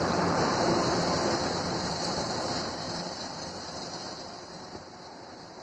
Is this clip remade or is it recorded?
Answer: remade